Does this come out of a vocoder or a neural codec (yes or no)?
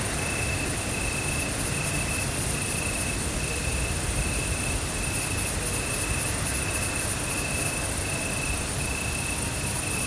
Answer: no